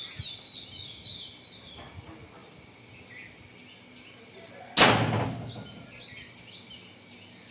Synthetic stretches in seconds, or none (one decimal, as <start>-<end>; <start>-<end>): none